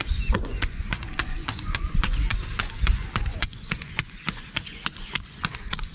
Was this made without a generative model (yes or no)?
no